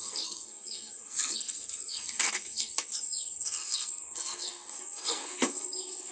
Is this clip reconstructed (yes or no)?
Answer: yes